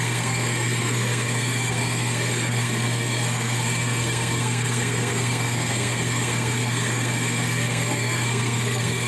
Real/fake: fake